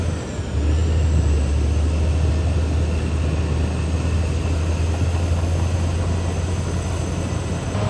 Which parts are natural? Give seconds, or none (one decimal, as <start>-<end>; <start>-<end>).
0.0-7.9